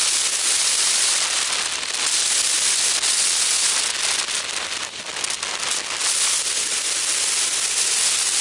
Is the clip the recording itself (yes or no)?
yes